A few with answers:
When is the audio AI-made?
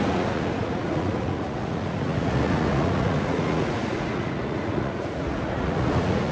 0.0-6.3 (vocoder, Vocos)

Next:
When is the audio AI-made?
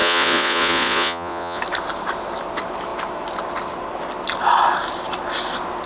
0.0-1.6 (vocoder, Vocos)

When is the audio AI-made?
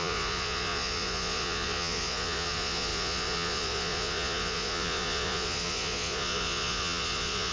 0.0-7.5 (vocoder, Vocos)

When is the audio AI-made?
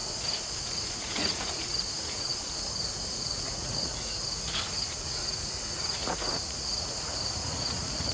0.6-2.3 (vocoder, Vocos); 3.0-8.1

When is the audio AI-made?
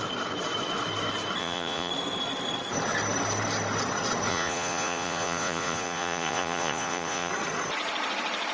1.4-1.9 (vocoder, Vocos); 4.3-7.3